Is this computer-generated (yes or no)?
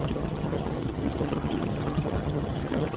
yes